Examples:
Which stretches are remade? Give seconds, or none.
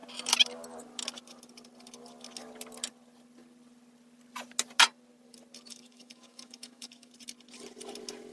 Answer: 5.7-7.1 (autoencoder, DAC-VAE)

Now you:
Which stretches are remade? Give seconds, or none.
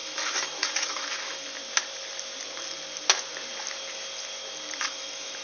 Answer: 0.0-1.6 (autoencoder, DAC-VAE); 4.8-5.4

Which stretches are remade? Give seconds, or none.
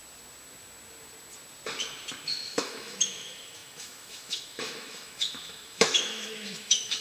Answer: 2.3-7.0 (autoencoder, DAC-VAE)